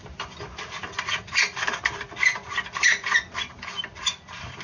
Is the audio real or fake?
fake